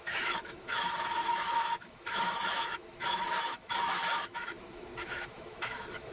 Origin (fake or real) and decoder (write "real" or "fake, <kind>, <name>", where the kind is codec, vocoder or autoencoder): fake, autoencoder, DAC-VAE